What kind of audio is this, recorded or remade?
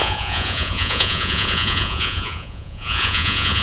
remade